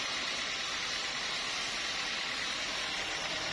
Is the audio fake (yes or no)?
no